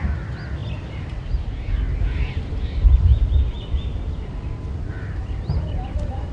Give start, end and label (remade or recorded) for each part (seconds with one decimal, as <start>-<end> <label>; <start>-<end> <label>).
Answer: 0.0-6.3 recorded